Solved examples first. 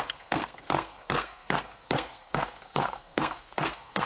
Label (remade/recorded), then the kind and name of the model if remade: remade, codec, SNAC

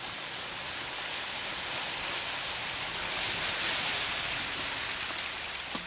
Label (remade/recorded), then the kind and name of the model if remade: recorded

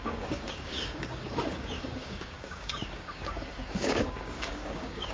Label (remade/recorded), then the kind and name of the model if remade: remade, codec, DAC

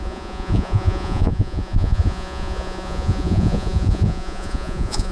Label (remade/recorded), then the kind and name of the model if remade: remade, vocoder, Vocos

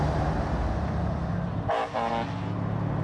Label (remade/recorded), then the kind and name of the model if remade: recorded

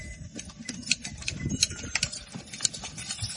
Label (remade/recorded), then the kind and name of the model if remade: recorded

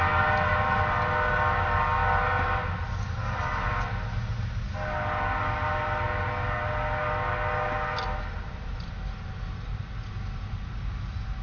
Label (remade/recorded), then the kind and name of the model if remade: recorded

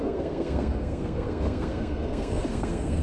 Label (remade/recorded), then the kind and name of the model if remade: remade, codec, SNAC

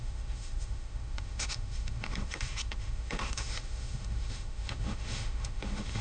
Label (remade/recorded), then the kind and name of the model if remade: remade, autoencoder, DAC-VAE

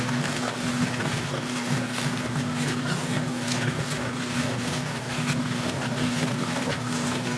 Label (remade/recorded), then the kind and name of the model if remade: remade, codec, DAC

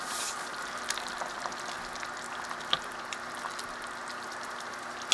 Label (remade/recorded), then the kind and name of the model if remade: recorded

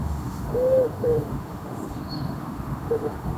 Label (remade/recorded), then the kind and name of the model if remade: remade, autoencoder, DAC-VAE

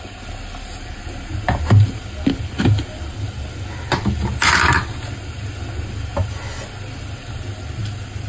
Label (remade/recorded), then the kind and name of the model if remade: recorded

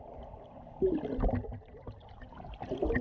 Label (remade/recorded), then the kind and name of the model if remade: recorded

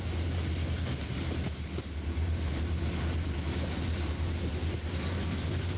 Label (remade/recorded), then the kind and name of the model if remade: recorded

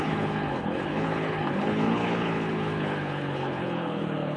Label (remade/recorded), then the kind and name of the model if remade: remade, codec, HILCodec